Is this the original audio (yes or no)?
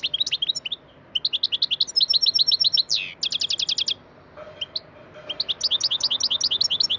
yes